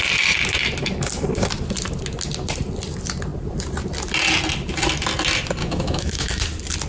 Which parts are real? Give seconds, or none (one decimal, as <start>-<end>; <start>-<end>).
0.0-5.6; 6.4-6.9